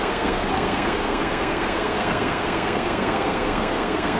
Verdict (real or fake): fake